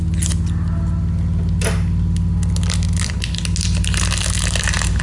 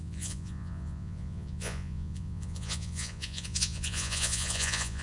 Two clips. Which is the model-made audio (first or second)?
second